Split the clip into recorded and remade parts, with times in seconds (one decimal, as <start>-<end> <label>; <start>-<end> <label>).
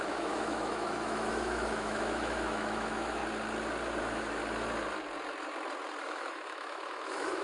0.0-3.2 remade; 3.2-4.0 recorded; 4.0-4.4 remade; 4.4-6.0 recorded; 6.0-7.4 remade